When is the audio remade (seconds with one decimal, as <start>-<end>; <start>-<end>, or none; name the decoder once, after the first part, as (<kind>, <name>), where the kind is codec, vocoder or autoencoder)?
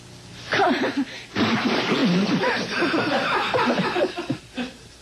none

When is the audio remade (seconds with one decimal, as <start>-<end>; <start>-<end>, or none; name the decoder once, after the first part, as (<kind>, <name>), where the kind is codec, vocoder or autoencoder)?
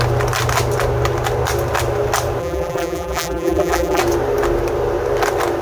2.4-4.0 (vocoder, BigVGAN v2)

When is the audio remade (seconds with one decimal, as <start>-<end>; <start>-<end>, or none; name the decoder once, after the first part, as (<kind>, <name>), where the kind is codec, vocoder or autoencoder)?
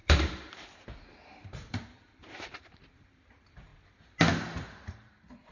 0.0-3.7 (vocoder, BigVGAN v2); 4.9-5.5